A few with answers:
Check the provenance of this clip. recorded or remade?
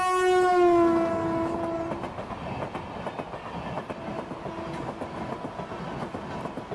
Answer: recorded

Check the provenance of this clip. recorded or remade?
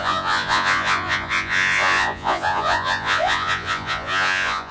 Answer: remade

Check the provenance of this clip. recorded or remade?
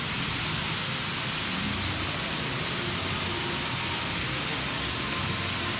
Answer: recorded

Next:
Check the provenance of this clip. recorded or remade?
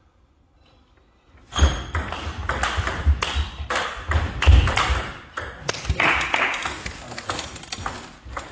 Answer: recorded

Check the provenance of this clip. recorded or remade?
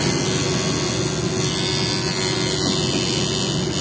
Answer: recorded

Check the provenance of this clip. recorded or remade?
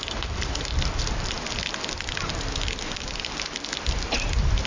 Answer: recorded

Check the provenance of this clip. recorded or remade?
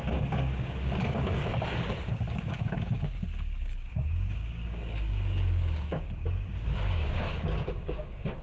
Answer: remade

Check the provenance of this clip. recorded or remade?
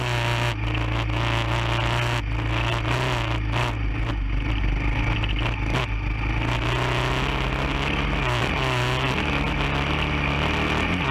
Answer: recorded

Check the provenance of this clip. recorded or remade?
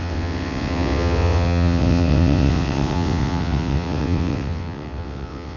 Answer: remade